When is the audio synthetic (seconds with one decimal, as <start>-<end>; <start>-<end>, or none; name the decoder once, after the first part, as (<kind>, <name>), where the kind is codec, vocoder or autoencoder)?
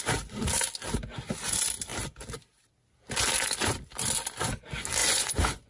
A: 5.0-5.7 (vocoder, Vocos)